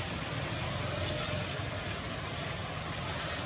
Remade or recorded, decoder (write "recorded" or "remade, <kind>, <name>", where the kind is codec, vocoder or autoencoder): recorded